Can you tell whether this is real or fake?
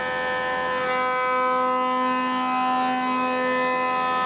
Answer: real